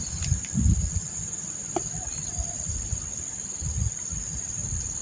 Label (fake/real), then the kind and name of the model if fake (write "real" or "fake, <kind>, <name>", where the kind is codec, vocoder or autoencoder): real